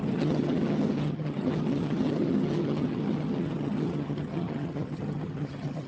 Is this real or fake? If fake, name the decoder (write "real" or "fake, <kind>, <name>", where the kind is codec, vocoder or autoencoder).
fake, vocoder, HiFi-GAN